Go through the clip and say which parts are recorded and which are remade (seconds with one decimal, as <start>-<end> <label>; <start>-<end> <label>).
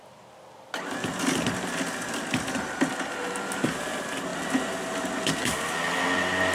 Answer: 0.0-6.5 recorded